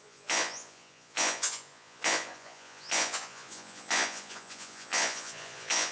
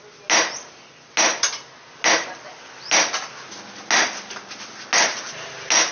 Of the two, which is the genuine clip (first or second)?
second